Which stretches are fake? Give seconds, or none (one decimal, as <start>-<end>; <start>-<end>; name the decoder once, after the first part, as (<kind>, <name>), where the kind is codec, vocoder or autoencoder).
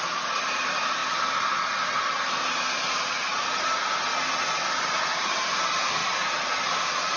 0.0-1.0 (vocoder, BigVGAN v2); 2.3-4.1; 4.8-6.0; 6.7-7.2